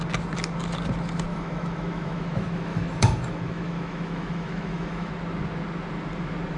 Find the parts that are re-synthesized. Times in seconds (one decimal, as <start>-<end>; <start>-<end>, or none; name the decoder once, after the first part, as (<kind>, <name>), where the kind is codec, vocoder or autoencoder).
1.3-5.1 (autoencoder, DAC-VAE)